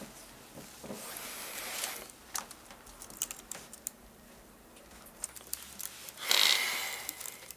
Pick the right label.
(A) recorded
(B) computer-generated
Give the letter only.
A